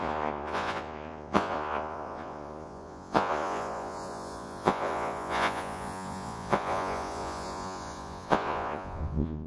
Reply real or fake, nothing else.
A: fake